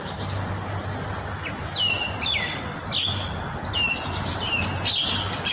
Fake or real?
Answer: real